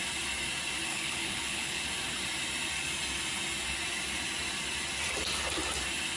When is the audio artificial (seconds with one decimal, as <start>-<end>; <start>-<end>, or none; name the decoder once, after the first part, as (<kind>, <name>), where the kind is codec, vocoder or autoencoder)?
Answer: 0.9-1.8 (codec, HILCodec)